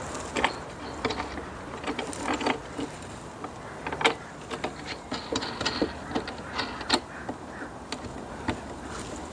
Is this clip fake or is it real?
real